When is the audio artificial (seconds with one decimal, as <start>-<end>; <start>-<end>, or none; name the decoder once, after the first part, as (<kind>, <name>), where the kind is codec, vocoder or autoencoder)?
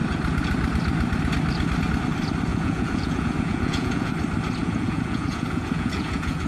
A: 2.5-4.1 (vocoder, Vocos); 4.6-6.5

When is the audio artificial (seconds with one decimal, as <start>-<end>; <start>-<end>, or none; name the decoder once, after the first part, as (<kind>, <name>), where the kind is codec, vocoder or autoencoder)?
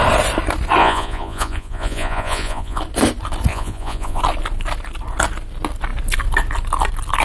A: 0.8-2.8 (vocoder, Vocos); 3.5-4.2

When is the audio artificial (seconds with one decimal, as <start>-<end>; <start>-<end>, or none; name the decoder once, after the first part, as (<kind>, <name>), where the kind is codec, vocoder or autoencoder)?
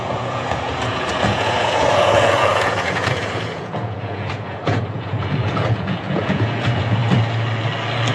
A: 0.0-7.0 (vocoder, Vocos)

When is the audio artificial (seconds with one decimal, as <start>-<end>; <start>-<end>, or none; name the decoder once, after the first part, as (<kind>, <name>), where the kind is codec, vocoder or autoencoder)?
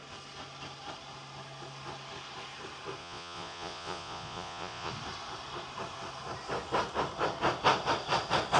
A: 3.0-4.9 (vocoder, Vocos)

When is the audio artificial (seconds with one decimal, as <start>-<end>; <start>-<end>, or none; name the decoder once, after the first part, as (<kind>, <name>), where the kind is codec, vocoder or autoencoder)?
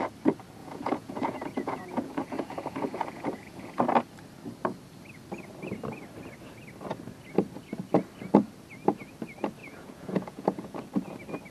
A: 0.6-3.8 (vocoder, Vocos); 9.6-10.8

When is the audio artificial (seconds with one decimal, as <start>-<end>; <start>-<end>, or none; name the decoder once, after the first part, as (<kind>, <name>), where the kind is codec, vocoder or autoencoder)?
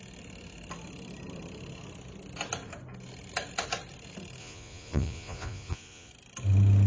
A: 4.4-6.1 (vocoder, Vocos)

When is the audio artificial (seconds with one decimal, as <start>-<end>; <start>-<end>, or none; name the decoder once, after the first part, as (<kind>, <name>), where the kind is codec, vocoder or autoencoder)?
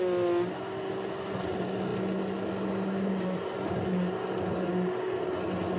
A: none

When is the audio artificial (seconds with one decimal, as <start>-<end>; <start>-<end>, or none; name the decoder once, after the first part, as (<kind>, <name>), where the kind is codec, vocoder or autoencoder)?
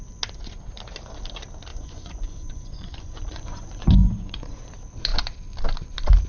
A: 1.7-4.6 (vocoder, Vocos)